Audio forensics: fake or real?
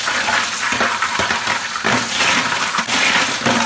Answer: real